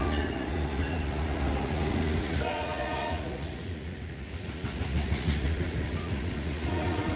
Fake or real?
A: fake